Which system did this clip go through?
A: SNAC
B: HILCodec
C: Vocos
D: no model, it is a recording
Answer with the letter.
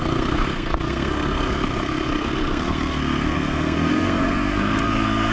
A